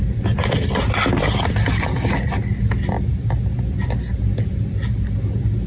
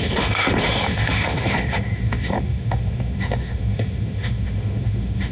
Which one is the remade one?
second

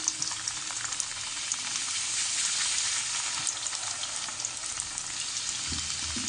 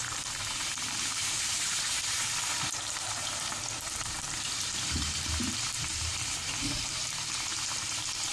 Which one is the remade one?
second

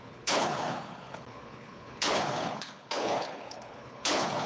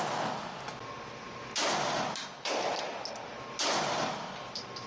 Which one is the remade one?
first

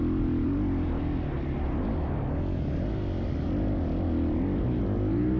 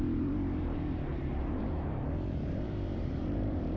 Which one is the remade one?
second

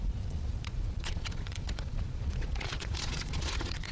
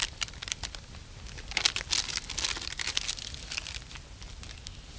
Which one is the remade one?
first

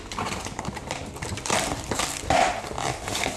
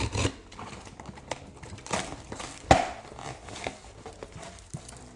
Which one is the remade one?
first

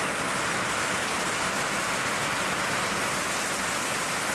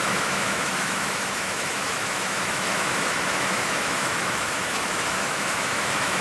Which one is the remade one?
second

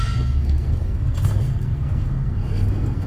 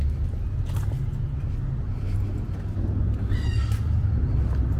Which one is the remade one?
first